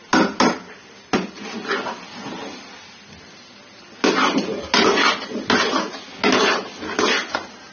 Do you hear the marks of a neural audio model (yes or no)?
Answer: no